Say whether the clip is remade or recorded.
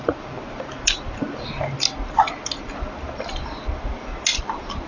recorded